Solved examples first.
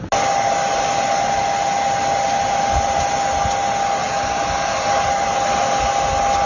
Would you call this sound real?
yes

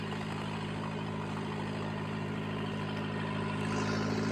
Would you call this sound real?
yes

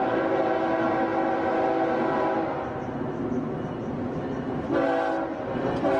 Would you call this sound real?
yes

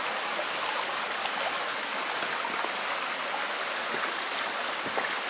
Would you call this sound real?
yes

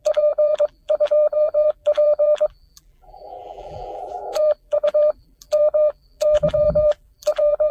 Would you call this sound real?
no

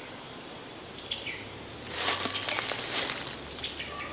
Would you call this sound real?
no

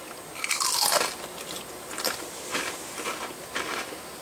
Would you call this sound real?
yes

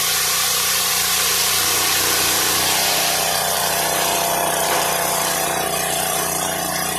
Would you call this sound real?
no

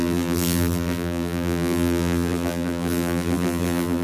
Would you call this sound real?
no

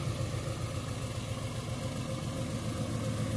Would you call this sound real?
yes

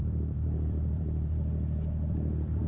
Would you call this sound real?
no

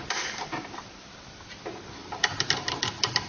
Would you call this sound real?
no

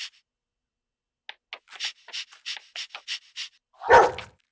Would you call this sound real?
yes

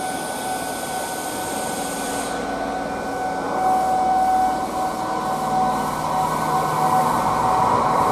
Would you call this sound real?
yes